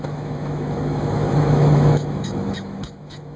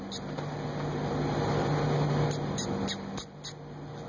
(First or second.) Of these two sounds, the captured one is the second